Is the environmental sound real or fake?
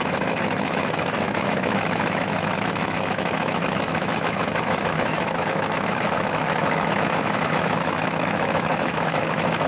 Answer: fake